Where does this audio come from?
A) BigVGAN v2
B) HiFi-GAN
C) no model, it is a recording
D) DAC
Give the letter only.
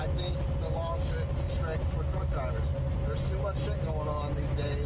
C